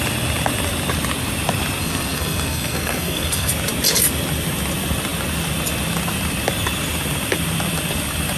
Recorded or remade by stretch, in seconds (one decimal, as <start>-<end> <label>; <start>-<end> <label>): 0.0-1.8 recorded; 1.8-3.5 remade; 3.5-8.4 recorded